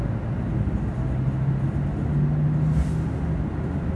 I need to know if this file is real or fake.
real